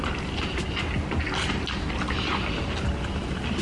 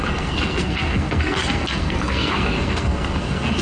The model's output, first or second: second